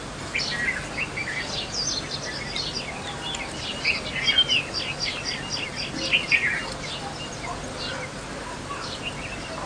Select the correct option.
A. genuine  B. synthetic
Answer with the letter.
A